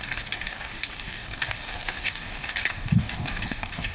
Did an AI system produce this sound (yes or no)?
yes